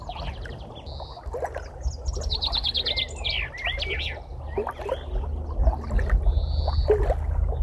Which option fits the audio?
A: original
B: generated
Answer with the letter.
A